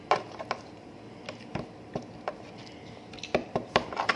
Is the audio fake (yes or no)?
no